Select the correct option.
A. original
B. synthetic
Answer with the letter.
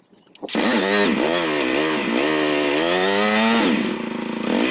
A